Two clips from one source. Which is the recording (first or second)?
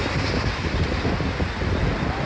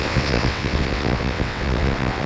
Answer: first